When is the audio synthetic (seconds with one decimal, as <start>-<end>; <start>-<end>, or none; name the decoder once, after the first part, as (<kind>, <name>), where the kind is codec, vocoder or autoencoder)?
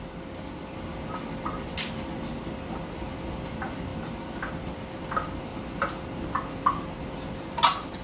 none